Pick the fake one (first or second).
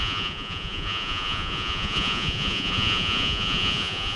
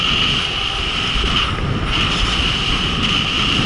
first